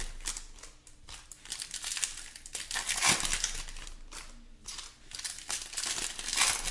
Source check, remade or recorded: recorded